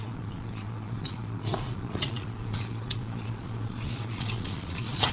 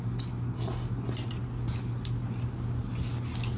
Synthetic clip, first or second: first